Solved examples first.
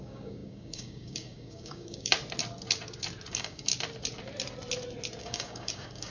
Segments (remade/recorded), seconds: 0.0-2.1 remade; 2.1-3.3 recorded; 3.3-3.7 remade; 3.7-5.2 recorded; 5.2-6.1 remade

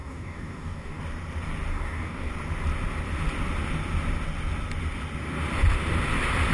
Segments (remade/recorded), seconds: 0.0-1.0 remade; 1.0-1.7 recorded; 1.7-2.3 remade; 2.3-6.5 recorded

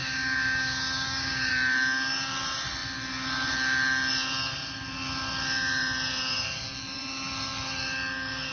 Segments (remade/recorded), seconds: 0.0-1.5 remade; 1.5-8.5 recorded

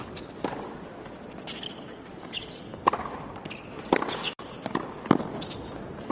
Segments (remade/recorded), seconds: 0.0-2.1 recorded; 2.1-2.8 remade; 2.8-6.1 recorded

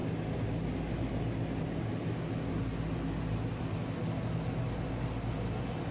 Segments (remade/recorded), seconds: 0.0-5.9 recorded